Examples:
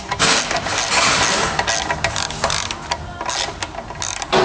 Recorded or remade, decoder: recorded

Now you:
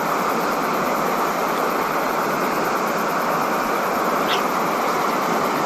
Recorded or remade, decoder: recorded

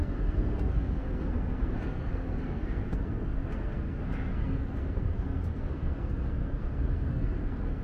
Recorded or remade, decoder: remade, codec, SNAC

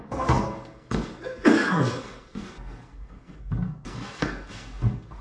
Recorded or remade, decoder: remade, codec, SNAC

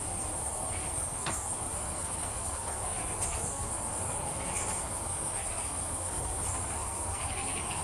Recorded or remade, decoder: remade, codec, SNAC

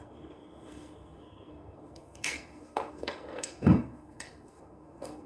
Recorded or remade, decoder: remade, codec, SNAC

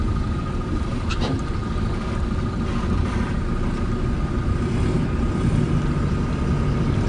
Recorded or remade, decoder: recorded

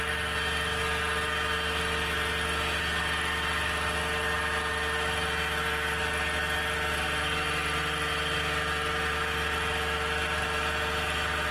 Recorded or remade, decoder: recorded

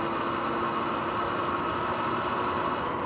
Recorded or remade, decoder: recorded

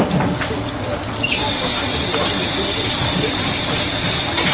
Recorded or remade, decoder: recorded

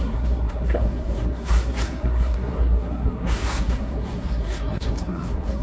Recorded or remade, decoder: remade, codec, SNAC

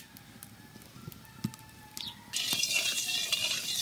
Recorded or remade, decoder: recorded